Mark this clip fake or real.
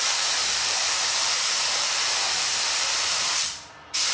fake